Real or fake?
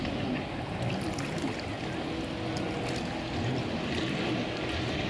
real